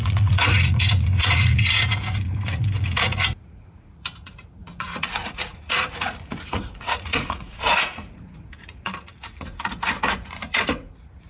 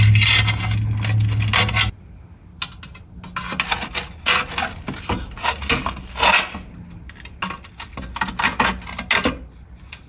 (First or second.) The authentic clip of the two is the second